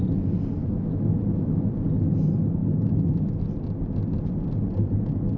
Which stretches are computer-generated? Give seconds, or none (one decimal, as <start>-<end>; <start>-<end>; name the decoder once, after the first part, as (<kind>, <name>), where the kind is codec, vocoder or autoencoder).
0.6-1.7 (autoencoder, DAC-VAE); 2.6-3.3